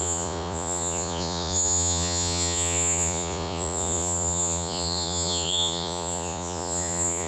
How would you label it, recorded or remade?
remade